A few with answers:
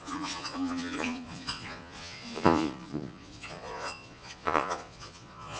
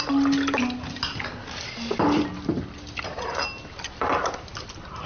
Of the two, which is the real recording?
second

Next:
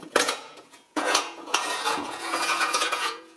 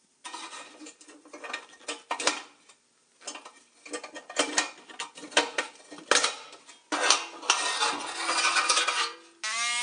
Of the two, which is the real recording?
second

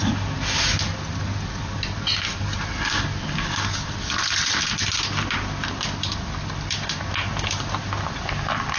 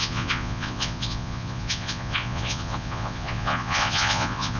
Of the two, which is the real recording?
first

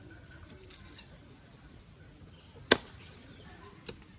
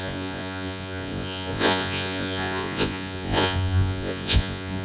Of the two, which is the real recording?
first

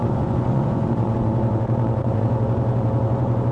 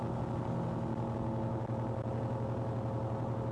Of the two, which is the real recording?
second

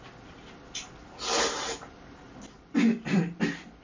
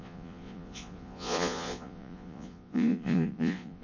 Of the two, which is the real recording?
first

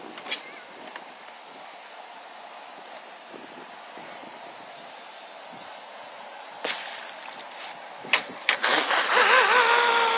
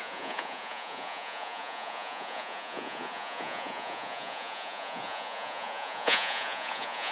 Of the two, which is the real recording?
first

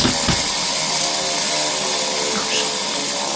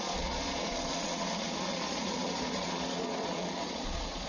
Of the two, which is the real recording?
first